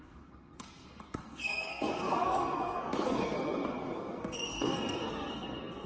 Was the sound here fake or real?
fake